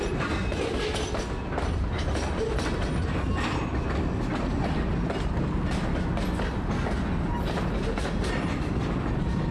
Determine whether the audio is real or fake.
real